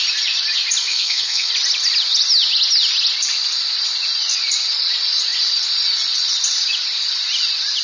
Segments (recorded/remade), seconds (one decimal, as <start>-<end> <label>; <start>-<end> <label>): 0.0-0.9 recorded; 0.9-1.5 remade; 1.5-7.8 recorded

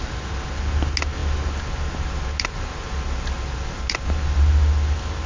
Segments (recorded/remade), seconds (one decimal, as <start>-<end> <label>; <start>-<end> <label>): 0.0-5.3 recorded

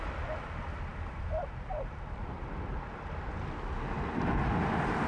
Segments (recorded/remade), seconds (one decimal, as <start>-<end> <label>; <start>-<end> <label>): 0.0-5.1 recorded

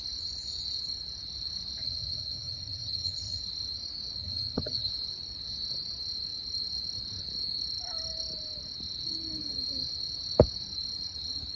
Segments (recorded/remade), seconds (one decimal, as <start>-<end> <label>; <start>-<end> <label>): 0.0-1.8 recorded; 1.8-3.4 remade; 3.4-4.2 recorded; 4.2-4.9 remade; 4.9-11.6 recorded

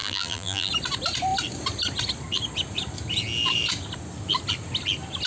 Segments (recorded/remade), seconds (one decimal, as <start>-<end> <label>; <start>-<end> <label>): 0.0-0.7 remade; 0.7-5.3 recorded

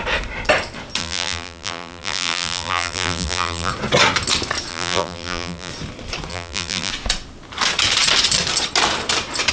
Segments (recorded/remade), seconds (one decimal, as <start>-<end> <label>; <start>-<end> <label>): 0.0-1.0 recorded; 1.0-3.7 remade; 3.7-4.7 recorded; 4.7-5.7 remade; 5.7-6.3 recorded; 6.3-6.9 remade; 6.9-9.5 recorded

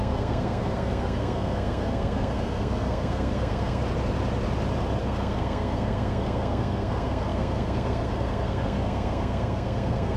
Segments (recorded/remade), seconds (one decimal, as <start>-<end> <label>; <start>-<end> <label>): 0.0-3.8 remade; 3.8-5.0 recorded; 5.0-10.2 remade

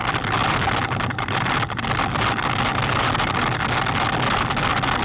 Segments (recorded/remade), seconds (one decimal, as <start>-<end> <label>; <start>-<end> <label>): 0.0-5.0 recorded